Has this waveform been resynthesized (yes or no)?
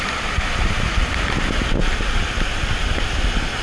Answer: no